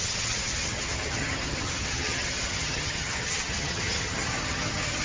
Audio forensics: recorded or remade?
remade